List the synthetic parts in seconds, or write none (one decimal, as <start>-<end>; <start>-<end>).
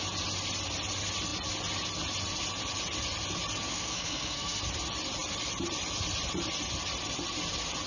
3.7-4.6